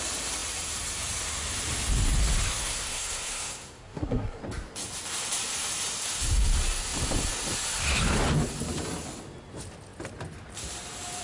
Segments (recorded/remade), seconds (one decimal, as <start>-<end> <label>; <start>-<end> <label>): 0.0-2.6 recorded; 2.6-4.4 remade; 4.4-11.2 recorded